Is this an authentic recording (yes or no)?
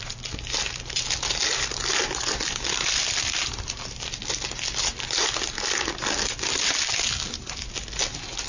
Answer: yes